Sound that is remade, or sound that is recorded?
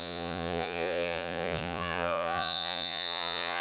remade